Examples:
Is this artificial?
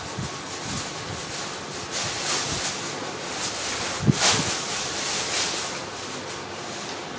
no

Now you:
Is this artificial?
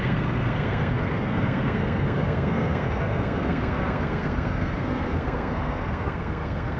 yes